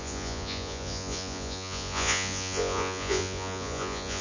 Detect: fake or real fake